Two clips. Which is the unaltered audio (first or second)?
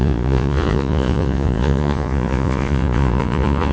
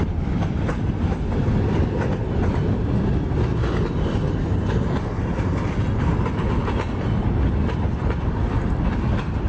second